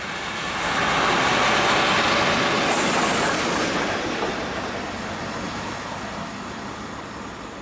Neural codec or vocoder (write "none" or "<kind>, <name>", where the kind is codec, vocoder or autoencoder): none